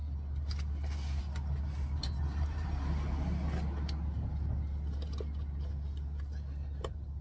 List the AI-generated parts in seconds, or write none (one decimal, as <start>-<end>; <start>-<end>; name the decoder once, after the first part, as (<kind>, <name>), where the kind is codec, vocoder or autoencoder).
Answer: 2.3-2.8 (vocoder, BigVGAN v2)